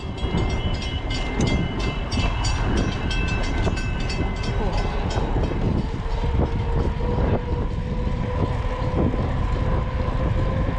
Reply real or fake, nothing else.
real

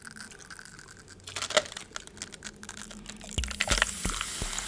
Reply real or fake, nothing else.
real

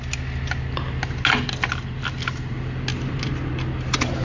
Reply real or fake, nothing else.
real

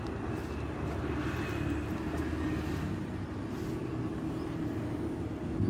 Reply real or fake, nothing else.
real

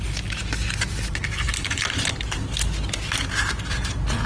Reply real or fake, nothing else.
real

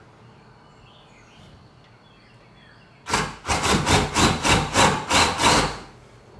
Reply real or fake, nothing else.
real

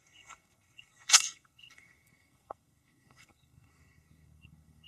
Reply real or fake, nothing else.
fake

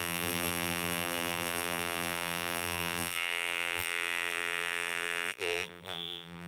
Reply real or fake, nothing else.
fake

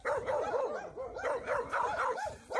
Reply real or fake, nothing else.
real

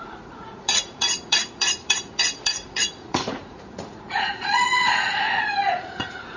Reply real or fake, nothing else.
fake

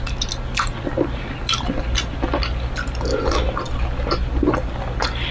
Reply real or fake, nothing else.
real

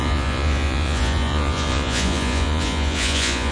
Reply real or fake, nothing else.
fake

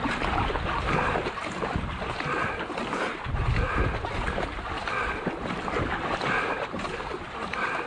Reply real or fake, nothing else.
real